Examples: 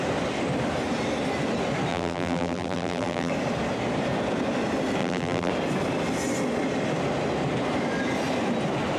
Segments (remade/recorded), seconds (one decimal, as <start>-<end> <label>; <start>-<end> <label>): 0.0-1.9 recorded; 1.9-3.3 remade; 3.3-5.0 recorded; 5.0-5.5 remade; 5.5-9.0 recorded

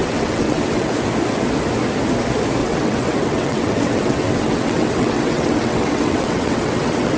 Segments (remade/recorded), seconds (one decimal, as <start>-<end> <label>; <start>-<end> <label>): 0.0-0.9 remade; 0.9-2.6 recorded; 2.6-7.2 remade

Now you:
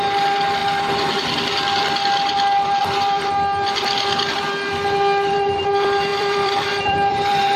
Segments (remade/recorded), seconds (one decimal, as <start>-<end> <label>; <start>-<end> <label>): 0.0-6.1 recorded; 6.1-7.6 remade

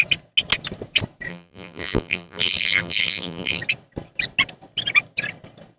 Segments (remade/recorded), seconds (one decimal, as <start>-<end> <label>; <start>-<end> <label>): 0.0-1.3 recorded; 1.3-3.6 remade; 3.6-5.8 recorded

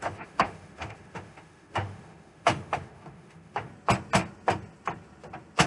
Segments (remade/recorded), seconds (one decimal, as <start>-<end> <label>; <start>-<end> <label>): 0.0-3.7 remade; 3.7-5.7 recorded

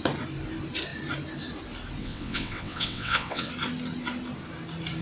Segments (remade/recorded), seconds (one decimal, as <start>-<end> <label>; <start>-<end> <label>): 0.0-2.0 recorded; 2.0-3.5 remade; 3.5-5.0 recorded

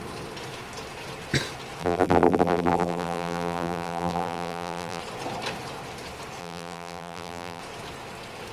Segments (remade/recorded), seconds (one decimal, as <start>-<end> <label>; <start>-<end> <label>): 0.0-1.8 recorded; 1.8-5.0 remade; 5.0-6.4 recorded; 6.4-7.6 remade; 7.6-8.5 recorded

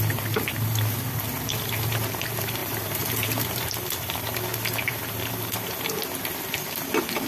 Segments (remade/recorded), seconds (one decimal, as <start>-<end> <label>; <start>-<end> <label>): 0.0-2.6 recorded; 2.6-3.7 remade; 3.7-7.3 recorded